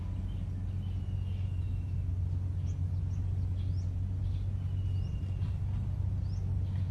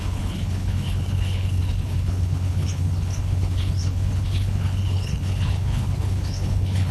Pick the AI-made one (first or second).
second